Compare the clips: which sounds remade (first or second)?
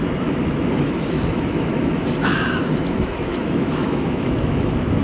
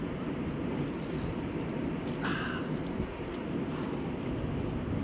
first